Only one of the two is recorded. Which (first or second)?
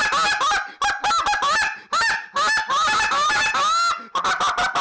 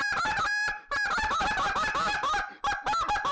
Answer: first